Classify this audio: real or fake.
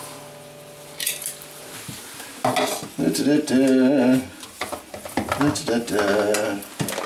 real